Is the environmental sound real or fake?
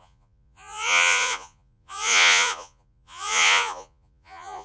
fake